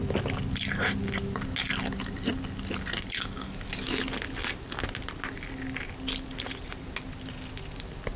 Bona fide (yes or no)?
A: yes